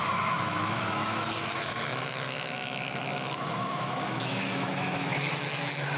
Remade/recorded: remade